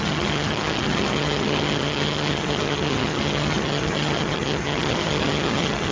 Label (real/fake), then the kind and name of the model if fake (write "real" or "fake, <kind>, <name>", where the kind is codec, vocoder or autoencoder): fake, vocoder, HiFi-GAN